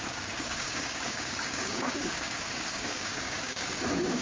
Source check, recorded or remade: remade